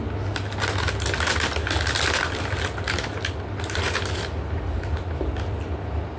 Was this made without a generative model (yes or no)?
yes